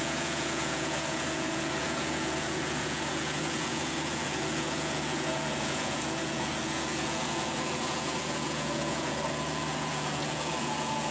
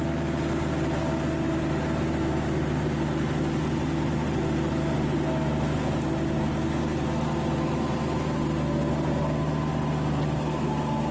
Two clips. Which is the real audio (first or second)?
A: second